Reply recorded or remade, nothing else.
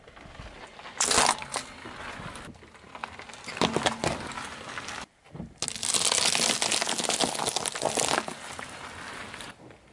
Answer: recorded